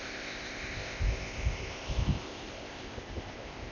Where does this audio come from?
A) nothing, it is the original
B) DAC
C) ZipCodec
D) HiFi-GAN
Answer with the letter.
C